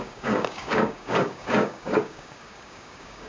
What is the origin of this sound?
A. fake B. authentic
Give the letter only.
A